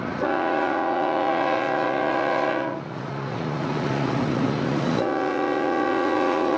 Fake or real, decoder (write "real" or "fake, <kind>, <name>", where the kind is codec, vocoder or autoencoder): fake, vocoder, Vocos